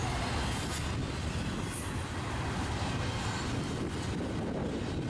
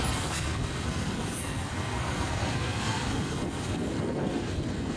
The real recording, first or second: first